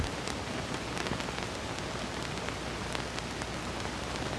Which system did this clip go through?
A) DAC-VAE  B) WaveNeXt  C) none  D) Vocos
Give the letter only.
C